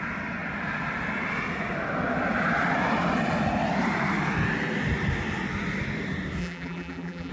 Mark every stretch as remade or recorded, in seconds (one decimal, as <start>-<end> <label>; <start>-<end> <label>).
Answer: 0.0-6.4 recorded; 6.4-7.3 remade